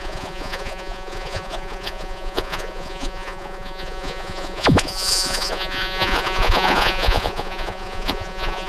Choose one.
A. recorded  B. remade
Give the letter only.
B